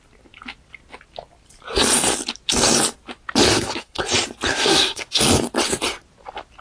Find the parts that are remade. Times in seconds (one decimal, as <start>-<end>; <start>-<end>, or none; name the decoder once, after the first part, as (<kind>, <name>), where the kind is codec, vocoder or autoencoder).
3.5-4.0 (codec, SNAC); 4.5-5.2